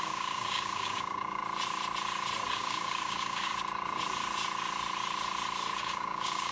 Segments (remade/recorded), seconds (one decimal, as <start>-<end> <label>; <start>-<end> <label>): 0.0-1.4 remade; 1.4-2.5 recorded; 2.5-3.5 remade; 3.5-5.8 recorded; 5.8-6.5 remade